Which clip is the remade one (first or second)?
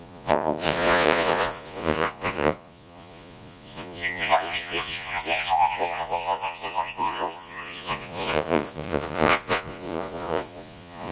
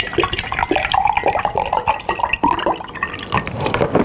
first